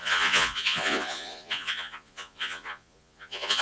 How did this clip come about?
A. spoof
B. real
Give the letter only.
A